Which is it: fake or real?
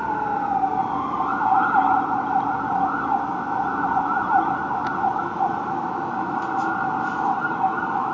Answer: real